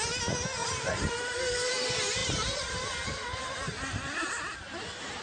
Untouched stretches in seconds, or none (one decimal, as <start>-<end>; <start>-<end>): 0.0-5.2